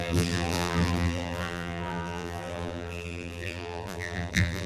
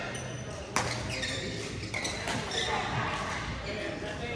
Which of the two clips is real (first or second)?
second